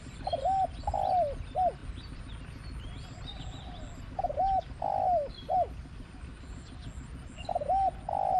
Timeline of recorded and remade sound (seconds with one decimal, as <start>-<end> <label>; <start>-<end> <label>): 0.0-8.4 recorded